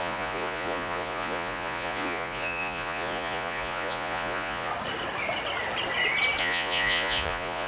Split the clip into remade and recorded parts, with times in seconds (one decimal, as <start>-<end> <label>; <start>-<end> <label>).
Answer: 0.0-4.7 remade; 4.7-6.4 recorded; 6.4-7.7 remade